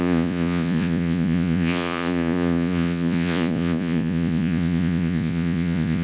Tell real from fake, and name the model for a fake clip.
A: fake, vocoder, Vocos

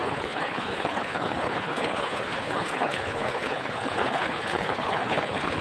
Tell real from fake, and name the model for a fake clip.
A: fake, codec, HILCodec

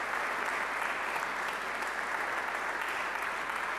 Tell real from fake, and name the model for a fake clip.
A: real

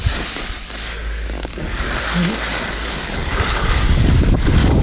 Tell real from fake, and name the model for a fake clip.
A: fake, codec, DAC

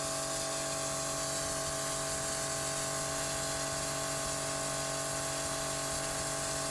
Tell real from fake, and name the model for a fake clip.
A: real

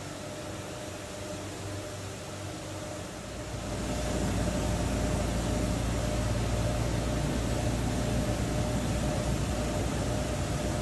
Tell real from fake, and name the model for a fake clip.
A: real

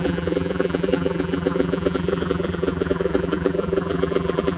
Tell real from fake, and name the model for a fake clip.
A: fake, vocoder, BigVGAN v2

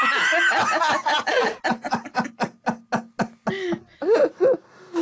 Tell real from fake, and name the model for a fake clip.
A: real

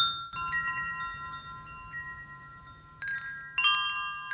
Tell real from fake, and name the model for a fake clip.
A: real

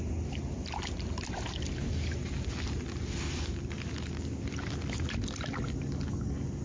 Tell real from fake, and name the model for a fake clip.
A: real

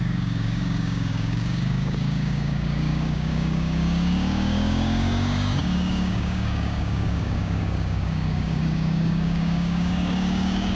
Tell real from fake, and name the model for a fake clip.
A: fake, codec, DAC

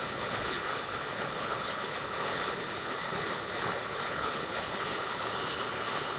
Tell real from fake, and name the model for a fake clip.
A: fake, codec, HILCodec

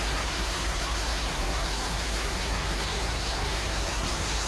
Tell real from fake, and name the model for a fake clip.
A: fake, codec, SNAC